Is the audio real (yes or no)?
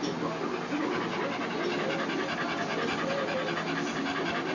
yes